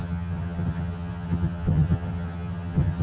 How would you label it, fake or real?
fake